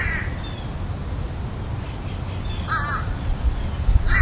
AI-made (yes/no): no